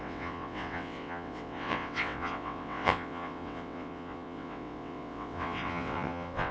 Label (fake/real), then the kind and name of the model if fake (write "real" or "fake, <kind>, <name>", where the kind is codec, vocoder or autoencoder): fake, vocoder, WaveNeXt